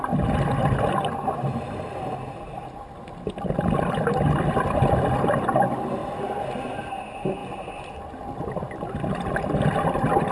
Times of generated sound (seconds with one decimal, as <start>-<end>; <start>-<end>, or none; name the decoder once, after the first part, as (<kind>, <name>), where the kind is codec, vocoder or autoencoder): none